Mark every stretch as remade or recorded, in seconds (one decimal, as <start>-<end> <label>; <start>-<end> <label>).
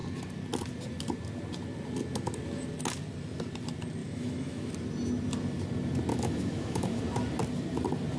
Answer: 0.0-4.0 recorded; 4.0-4.7 remade; 4.7-6.1 recorded; 6.1-7.0 remade; 7.0-8.2 recorded